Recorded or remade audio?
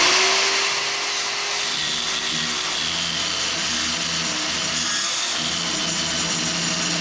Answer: recorded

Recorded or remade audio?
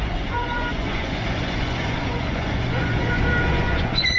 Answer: remade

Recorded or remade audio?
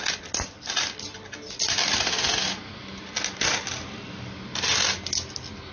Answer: recorded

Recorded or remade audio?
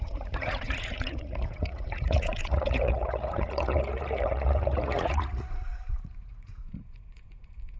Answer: remade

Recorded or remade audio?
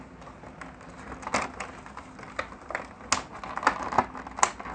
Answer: recorded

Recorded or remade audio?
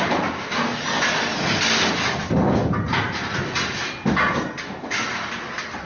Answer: recorded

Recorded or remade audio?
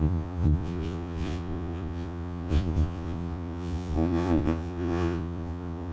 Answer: remade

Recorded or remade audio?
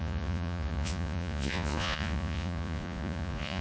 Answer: remade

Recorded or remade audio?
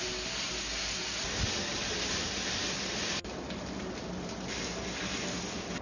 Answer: recorded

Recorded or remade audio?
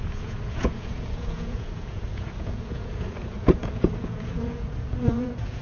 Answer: remade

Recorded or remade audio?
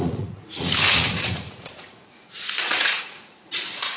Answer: remade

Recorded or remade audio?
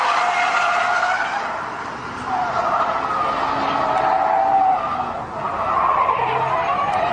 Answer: recorded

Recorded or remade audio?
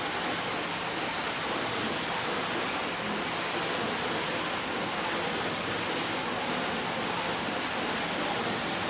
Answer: recorded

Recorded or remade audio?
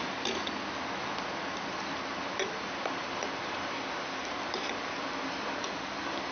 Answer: recorded